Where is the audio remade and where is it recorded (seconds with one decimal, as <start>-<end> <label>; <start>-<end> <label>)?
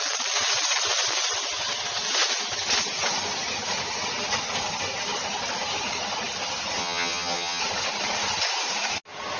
0.0-6.8 recorded; 6.8-7.6 remade; 7.6-9.4 recorded